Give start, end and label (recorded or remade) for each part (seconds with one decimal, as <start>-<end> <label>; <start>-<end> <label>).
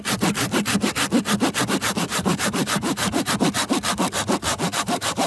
0.0-2.1 recorded; 2.1-3.3 remade; 3.3-4.5 recorded; 4.5-5.3 remade